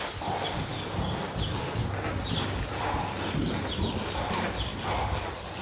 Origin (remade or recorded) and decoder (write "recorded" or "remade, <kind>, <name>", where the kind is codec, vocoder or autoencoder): recorded